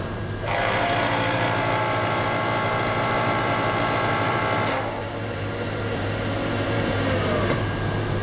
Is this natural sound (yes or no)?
no